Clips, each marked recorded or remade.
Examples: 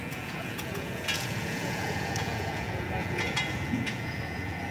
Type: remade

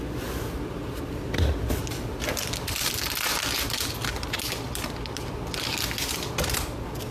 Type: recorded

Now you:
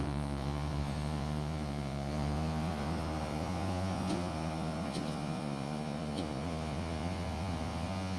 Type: remade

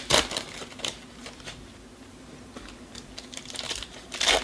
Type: recorded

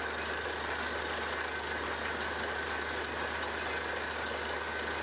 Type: recorded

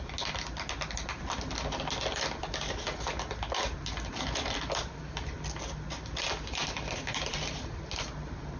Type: recorded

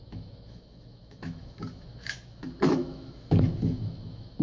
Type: remade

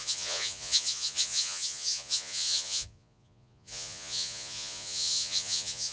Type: remade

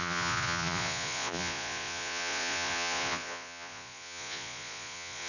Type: remade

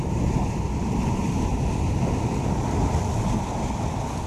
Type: recorded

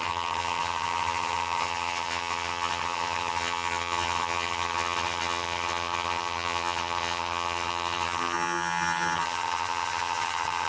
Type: remade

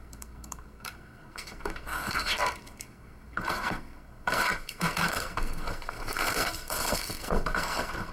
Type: remade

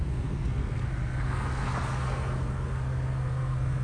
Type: remade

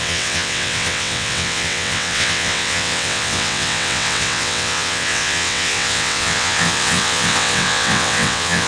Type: remade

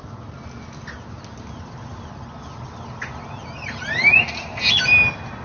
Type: recorded